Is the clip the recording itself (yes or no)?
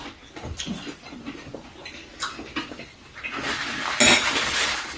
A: yes